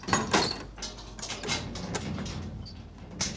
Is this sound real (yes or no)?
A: yes